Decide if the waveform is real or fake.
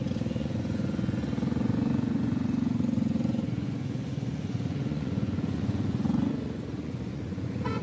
fake